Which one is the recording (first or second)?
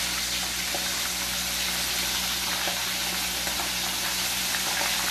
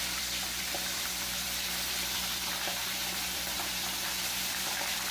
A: first